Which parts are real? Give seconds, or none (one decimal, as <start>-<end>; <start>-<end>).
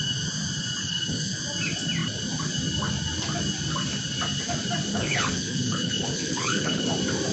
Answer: 0.0-0.8; 1.4-4.9; 6.8-7.3